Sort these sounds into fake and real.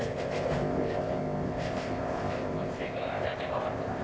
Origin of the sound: fake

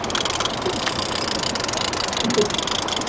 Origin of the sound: real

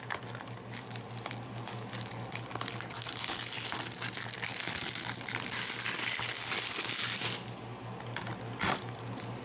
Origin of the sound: real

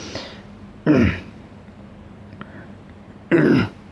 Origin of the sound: fake